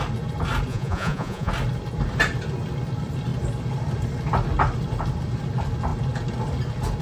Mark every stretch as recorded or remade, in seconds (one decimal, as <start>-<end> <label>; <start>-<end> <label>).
0.0-0.7 recorded; 0.7-1.5 remade; 1.5-7.0 recorded